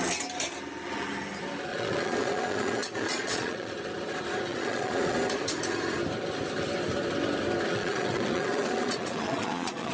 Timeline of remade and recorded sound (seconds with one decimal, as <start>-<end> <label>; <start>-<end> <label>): 0.0-1.7 recorded; 1.7-3.7 remade; 3.7-4.5 recorded; 4.5-5.2 remade; 5.2-7.7 recorded; 7.7-9.9 remade